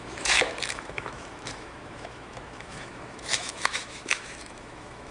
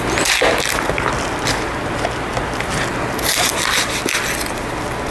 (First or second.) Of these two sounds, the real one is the second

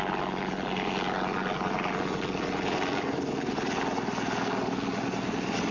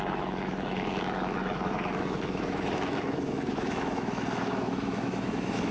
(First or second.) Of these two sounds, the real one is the first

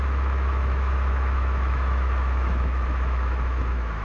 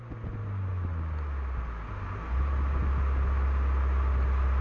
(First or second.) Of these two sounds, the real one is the second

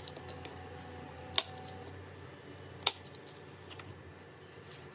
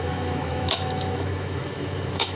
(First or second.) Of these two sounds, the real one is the first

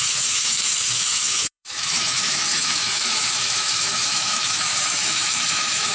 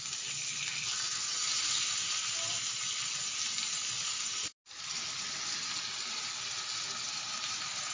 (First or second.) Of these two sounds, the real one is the second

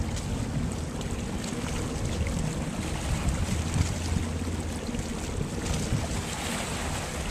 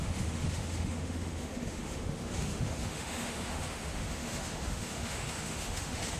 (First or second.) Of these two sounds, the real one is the first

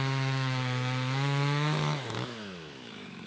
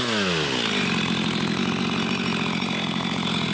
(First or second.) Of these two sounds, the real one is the second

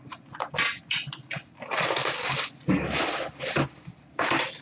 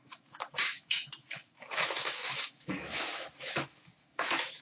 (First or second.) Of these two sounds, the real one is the first